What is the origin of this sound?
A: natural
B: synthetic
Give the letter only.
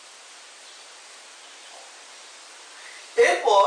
A